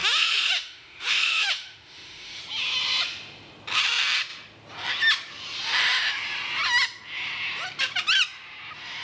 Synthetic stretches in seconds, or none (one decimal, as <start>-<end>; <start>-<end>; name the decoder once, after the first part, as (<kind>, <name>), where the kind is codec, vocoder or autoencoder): 0.0-2.4 (autoencoder, DAC-VAE)